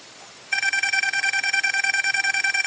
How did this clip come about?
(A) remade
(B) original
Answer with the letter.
A